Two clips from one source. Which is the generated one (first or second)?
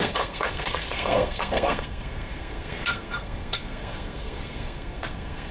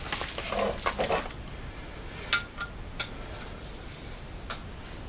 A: first